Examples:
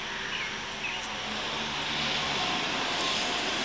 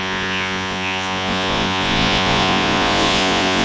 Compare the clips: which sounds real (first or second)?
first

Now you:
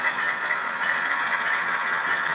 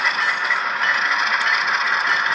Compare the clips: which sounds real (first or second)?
second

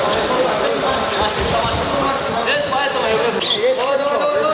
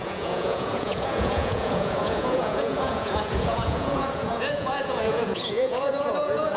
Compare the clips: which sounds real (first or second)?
first